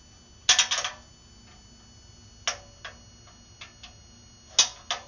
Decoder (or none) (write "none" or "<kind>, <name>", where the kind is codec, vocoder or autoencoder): none